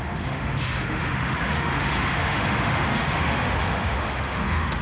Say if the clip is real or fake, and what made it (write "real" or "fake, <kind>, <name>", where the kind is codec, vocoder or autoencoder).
fake, autoencoder, DAC-VAE